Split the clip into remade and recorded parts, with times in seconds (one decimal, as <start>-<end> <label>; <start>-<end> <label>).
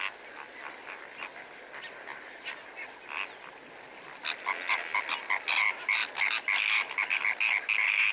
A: 0.0-8.1 recorded